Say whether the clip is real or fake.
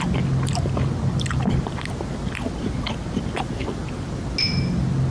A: real